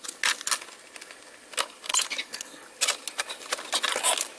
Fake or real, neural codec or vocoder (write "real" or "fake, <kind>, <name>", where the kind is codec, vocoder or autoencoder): real